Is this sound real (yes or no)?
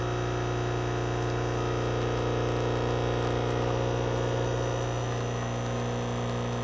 yes